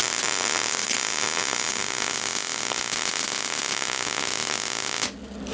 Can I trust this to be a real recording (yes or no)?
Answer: yes